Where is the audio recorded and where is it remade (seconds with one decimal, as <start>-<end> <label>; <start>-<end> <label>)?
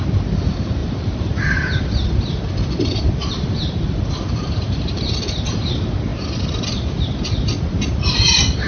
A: 0.0-0.8 recorded; 0.8-1.8 remade; 1.8-3.2 recorded; 3.2-5.0 remade; 5.0-8.7 recorded